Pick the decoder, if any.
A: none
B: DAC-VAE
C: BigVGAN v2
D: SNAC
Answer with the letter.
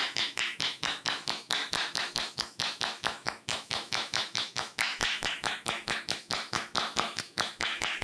B